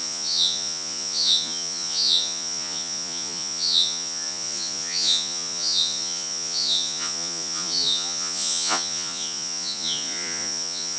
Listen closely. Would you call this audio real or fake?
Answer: fake